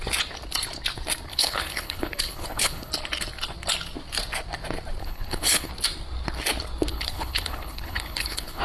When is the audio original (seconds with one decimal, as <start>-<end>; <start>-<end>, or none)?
0.0-1.3; 2.9-5.0; 5.7-6.9